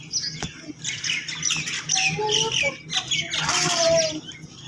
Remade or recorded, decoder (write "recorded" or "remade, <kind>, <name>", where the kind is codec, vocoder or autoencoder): recorded